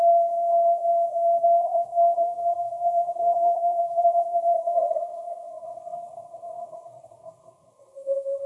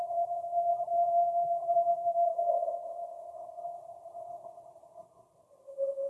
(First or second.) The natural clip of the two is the second